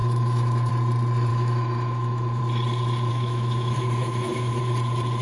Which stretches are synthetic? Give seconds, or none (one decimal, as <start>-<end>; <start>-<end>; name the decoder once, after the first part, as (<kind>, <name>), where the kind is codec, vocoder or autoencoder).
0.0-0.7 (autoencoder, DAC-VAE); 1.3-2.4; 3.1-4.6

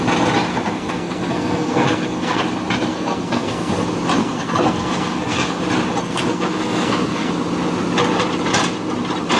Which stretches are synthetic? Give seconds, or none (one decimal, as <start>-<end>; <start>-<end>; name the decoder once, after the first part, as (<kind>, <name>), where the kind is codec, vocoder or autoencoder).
0.5-2.4 (codec, SNAC); 2.9-3.7; 4.2-5.6; 6.0-7.3

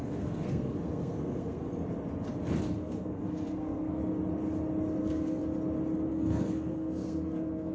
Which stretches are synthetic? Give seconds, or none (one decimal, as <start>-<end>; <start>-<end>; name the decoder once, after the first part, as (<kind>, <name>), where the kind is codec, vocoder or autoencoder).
0.0-1.6 (codec, SNAC); 2.8-4.0; 5.0-5.4; 6.1-7.7